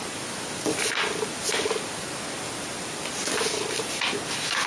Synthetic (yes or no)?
no